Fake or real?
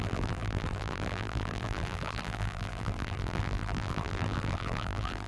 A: fake